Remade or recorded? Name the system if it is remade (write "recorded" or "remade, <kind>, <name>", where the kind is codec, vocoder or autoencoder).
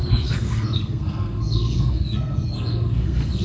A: remade, codec, SNAC